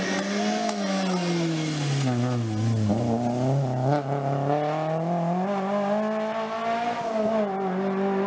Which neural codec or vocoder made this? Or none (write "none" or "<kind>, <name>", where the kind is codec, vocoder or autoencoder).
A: none